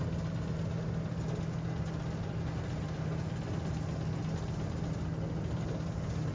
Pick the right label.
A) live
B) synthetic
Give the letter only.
A